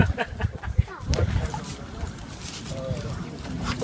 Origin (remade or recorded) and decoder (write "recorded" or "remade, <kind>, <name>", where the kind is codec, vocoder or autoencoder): remade, vocoder, BigVGAN v2